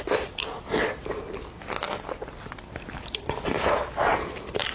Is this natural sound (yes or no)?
yes